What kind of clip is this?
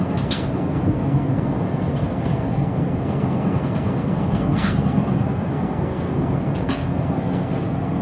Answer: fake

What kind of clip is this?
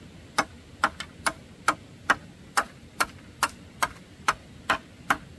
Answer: real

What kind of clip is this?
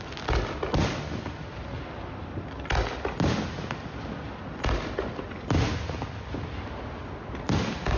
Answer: real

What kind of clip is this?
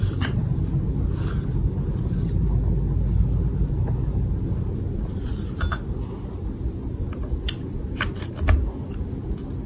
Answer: real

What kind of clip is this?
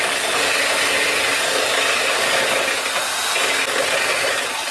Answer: real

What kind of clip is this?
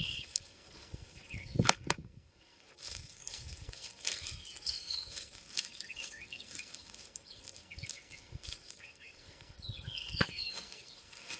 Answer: fake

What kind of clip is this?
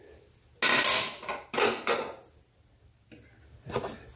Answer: real